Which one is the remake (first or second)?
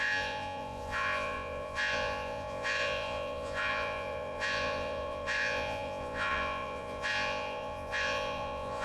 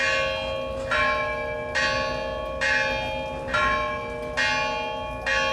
first